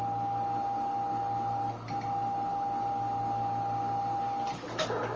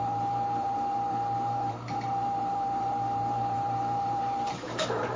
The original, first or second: first